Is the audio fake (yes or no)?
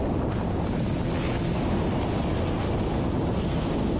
no